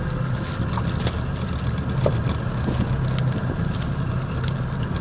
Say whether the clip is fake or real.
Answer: real